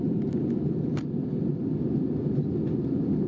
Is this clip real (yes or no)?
yes